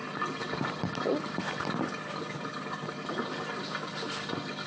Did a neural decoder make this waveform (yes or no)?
no